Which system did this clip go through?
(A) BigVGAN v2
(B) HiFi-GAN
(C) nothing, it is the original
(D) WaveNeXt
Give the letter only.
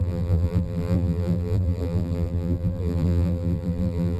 A